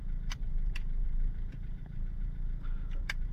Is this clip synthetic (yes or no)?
yes